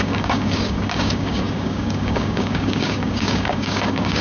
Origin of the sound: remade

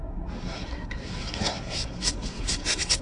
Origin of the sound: remade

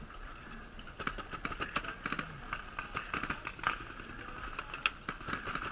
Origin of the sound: recorded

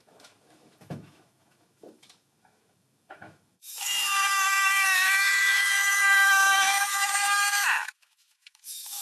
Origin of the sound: remade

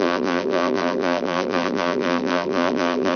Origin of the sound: remade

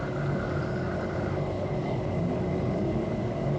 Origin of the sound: remade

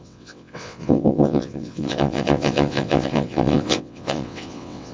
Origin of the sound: remade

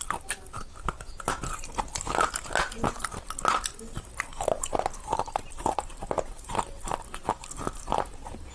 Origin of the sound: recorded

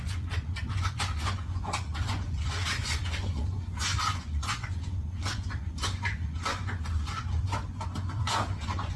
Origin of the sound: remade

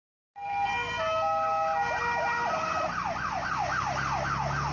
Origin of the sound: recorded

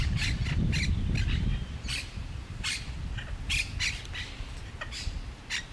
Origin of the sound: recorded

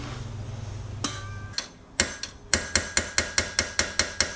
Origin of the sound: recorded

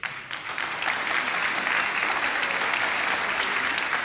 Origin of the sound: recorded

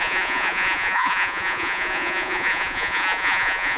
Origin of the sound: remade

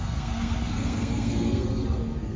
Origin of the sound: remade